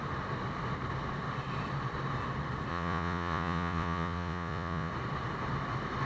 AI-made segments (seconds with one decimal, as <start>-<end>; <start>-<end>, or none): 2.7-4.9